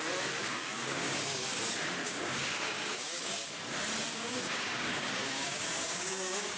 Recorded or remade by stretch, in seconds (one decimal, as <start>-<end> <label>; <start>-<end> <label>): 0.0-0.4 recorded; 0.4-1.6 remade; 1.6-2.0 recorded; 2.0-3.5 remade; 3.5-4.1 recorded; 4.1-6.6 remade